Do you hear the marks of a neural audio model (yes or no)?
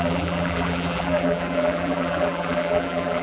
yes